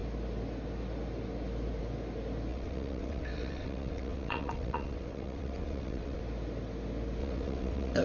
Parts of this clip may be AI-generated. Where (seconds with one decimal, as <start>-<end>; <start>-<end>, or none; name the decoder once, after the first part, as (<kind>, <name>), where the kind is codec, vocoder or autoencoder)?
2.5-6.2 (vocoder, WaveNeXt); 7.2-8.0